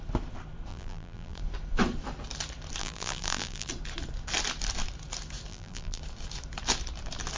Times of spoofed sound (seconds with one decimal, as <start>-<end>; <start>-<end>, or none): 0.7-1.4; 2.8-3.7; 5.5-6.0

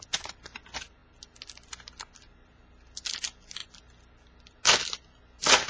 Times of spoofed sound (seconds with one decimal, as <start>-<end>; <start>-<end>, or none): none